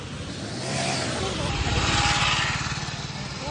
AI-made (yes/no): no